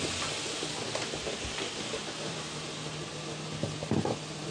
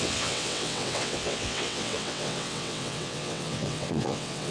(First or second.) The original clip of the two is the first